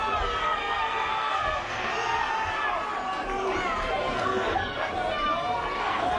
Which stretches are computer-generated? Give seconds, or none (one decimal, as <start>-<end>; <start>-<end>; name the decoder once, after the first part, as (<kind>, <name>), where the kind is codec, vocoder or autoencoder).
0.4-2.3 (codec, SNAC); 4.0-4.9; 5.4-6.2